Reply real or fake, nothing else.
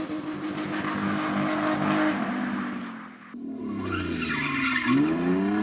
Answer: real